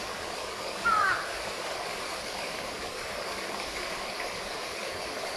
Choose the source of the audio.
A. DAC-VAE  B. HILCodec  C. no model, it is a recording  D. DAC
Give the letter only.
D